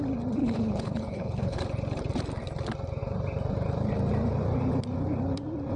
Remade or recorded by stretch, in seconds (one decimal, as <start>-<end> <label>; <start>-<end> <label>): 0.0-0.4 recorded; 0.4-1.6 remade; 1.6-5.8 recorded